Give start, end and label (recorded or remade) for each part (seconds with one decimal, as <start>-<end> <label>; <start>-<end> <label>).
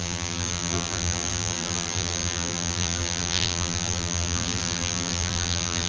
0.0-5.9 remade